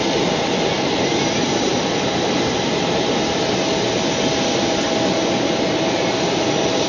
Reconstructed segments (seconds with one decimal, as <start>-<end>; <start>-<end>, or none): none

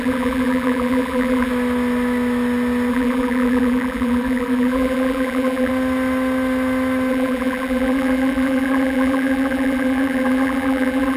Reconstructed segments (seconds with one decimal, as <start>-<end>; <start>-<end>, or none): 0.0-1.5; 2.9-5.7; 7.1-11.2

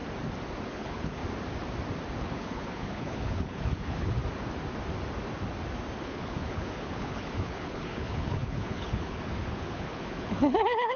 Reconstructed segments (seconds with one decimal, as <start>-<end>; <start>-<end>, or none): 0.7-1.2; 2.2-4.2; 6.0-11.0

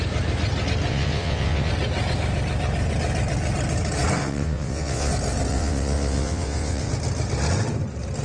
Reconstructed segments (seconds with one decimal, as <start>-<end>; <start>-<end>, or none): 0.9-1.7; 4.2-5.1; 5.5-6.9

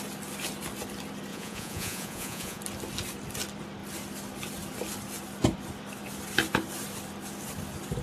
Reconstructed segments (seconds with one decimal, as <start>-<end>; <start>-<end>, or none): 1.3-2.6

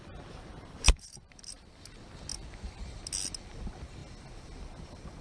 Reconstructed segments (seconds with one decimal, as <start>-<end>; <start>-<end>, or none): 0.5-1.7

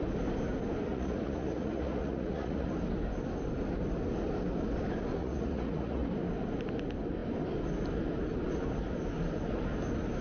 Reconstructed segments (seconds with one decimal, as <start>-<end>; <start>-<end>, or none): 0.9-2.7; 5.2-6.1